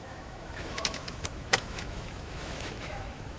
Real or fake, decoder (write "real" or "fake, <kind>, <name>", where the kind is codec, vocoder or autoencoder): fake, autoencoder, DAC-VAE